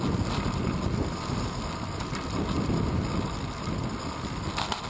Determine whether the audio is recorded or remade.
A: recorded